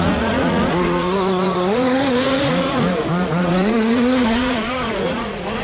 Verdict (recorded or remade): remade